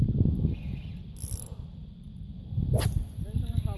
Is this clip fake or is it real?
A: real